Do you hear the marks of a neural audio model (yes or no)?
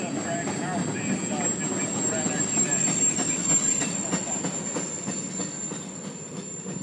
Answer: no